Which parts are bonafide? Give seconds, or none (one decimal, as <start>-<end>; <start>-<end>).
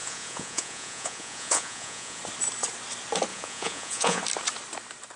2.2-3.3; 4.2-5.2